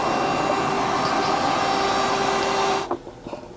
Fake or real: real